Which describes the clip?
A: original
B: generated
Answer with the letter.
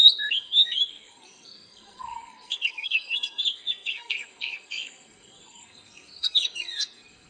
B